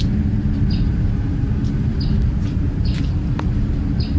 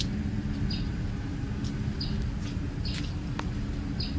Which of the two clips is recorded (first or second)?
second